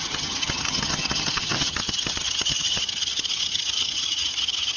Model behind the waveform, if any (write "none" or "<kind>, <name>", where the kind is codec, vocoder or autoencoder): vocoder, HiFi-GAN